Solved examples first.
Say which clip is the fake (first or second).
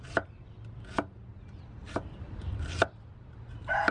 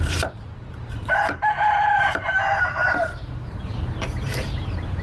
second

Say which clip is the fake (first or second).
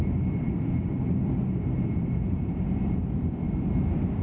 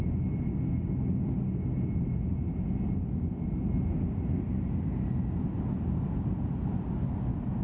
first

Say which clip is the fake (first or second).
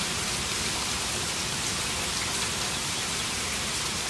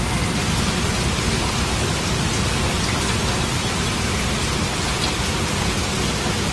first